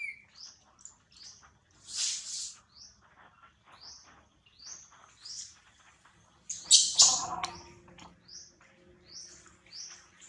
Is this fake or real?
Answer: real